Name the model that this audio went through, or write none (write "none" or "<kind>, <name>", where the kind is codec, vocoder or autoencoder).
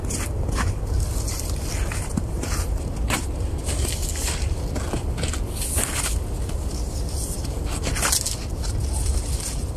none